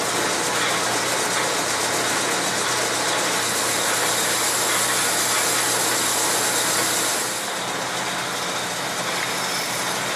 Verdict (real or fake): real